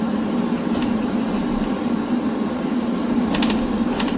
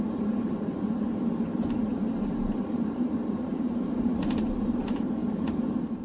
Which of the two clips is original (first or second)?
first